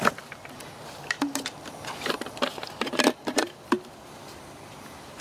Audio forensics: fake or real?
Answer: fake